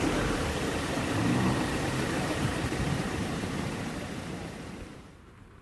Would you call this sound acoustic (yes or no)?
no